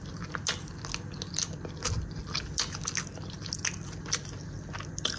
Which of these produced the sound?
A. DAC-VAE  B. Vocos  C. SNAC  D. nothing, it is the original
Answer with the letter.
D